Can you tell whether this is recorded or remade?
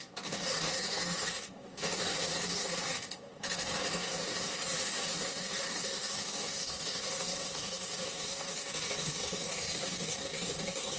remade